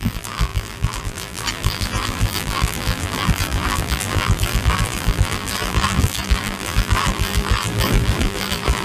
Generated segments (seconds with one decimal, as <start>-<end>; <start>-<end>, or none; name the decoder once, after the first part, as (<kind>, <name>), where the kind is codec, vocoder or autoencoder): 0.0-8.8 (vocoder, BigVGAN v2)